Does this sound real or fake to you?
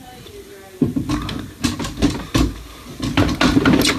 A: real